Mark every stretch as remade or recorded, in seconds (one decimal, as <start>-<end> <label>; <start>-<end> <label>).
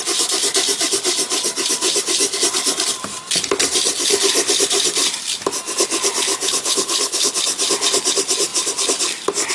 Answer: 0.0-6.3 recorded; 6.3-7.3 remade; 7.3-9.5 recorded